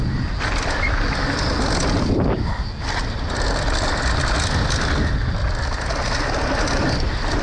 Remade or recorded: recorded